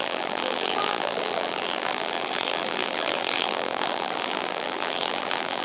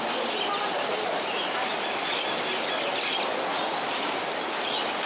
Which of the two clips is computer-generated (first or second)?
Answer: first